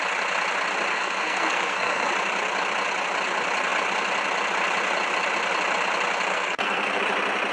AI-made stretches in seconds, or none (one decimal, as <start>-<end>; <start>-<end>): 0.9-2.1; 6.3-7.0